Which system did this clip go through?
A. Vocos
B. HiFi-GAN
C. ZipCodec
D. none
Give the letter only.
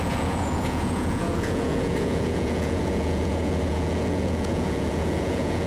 A